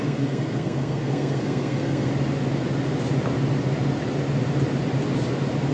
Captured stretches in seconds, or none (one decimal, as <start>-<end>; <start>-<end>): 2.1-5.7